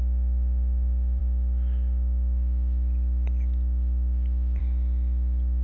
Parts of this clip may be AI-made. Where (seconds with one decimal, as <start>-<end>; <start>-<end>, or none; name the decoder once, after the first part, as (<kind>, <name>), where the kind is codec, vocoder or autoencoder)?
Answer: none